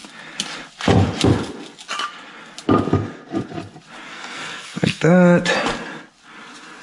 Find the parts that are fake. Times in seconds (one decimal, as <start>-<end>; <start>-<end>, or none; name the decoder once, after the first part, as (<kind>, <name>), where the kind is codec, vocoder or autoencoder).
4.1-5.0 (codec, SNAC)